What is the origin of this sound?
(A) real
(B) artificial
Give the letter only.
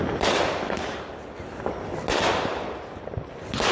A